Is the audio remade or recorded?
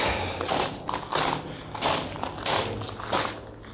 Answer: recorded